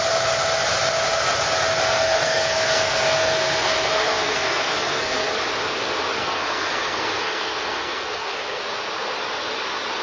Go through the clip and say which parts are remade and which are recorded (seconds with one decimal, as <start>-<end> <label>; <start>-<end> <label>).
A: 0.0-1.9 recorded; 1.9-5.3 remade; 5.3-6.2 recorded; 6.2-8.6 remade; 8.6-10.0 recorded